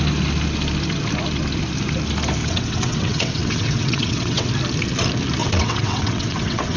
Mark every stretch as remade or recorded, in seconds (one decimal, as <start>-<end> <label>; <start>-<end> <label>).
0.0-2.4 recorded; 2.4-4.5 remade; 4.5-5.4 recorded; 5.4-6.8 remade

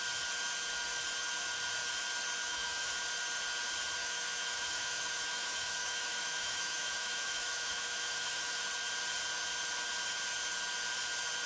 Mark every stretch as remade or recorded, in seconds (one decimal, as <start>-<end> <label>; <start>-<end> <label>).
0.0-2.4 recorded; 2.4-2.9 remade; 2.9-4.0 recorded; 4.0-8.7 remade; 8.7-11.5 recorded